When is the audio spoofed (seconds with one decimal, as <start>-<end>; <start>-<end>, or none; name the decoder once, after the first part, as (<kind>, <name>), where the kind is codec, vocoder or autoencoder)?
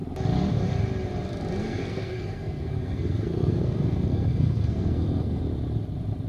1.6-5.4 (codec, SNAC)